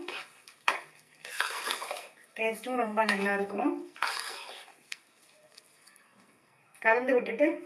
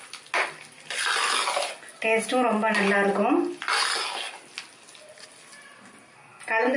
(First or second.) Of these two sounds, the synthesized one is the first